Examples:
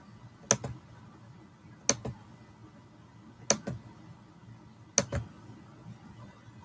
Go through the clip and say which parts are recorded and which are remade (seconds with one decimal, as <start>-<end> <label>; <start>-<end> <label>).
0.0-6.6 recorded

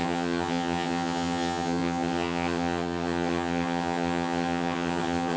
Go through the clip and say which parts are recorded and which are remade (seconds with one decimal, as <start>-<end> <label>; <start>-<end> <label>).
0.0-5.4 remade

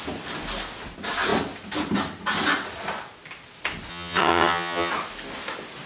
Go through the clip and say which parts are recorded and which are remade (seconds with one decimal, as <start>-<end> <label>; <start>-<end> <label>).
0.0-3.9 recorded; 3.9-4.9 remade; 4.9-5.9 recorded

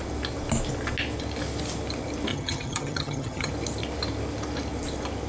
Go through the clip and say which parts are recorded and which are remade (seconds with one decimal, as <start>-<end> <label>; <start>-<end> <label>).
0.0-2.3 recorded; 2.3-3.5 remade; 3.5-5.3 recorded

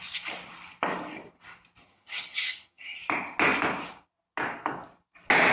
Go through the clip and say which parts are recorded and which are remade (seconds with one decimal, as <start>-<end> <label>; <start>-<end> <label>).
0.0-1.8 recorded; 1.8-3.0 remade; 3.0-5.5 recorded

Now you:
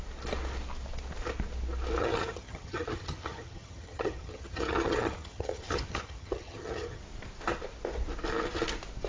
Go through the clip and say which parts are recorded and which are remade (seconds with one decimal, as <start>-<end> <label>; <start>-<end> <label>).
0.0-2.0 recorded; 2.0-7.0 remade; 7.0-9.1 recorded

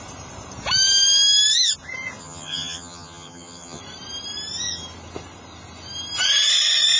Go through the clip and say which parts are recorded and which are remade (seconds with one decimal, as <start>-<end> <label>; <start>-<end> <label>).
0.0-2.2 recorded; 2.2-3.8 remade; 3.8-7.0 recorded

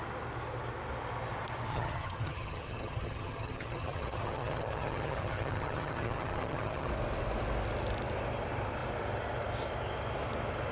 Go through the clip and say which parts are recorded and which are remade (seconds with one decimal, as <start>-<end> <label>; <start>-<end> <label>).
0.0-1.7 recorded; 1.7-6.9 remade; 6.9-10.7 recorded